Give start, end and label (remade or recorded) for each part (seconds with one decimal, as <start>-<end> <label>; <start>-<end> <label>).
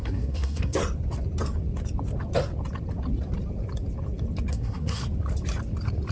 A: 0.0-0.8 remade; 0.8-4.5 recorded; 4.5-5.0 remade; 5.0-6.1 recorded